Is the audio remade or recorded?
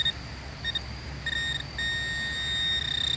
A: recorded